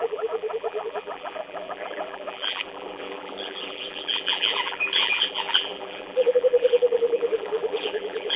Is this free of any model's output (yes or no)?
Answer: no